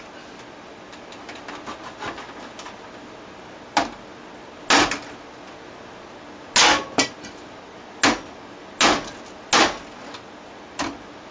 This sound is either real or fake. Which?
real